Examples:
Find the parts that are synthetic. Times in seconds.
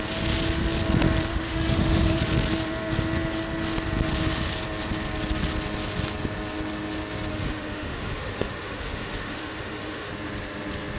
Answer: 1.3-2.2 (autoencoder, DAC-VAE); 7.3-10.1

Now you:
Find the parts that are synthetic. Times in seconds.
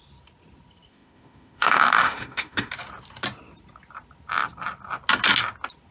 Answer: 0.9-2.7 (autoencoder, DAC-VAE)